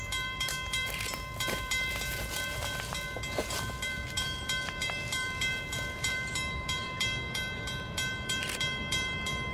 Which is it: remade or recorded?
remade